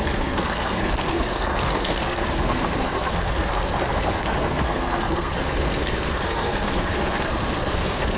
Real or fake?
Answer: fake